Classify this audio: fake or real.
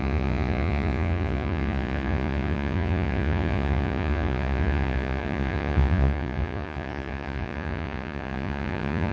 fake